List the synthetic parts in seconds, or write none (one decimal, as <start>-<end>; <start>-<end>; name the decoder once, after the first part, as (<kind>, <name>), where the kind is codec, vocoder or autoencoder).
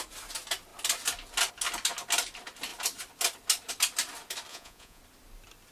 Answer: 4.5-5.0 (vocoder, Vocos)